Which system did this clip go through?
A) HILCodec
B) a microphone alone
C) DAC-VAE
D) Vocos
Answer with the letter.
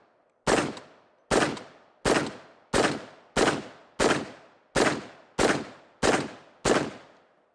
B